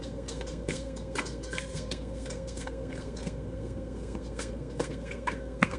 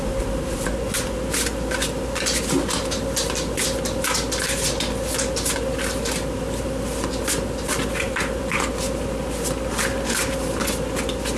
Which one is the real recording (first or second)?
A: second